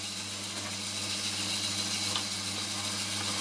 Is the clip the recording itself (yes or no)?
yes